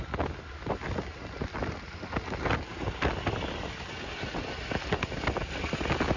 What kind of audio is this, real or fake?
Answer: real